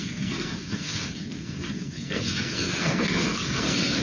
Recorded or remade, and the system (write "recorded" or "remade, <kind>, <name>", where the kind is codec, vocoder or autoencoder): remade, codec, SNAC